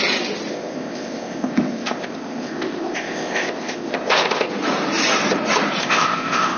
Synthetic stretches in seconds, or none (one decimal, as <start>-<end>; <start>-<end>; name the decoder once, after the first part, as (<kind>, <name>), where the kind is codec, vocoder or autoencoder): 0.5-4.5 (codec, ZipCodec); 5.8-6.6